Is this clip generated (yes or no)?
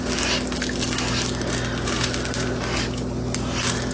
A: no